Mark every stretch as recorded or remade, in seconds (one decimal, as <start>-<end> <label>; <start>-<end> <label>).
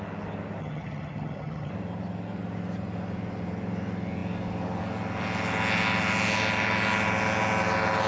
0.0-0.6 recorded; 0.6-1.7 remade; 1.7-8.1 recorded